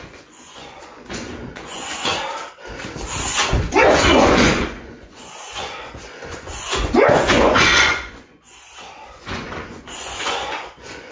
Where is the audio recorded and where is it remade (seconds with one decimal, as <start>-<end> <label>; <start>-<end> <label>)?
0.0-2.1 remade; 2.1-3.3 recorded; 3.3-11.1 remade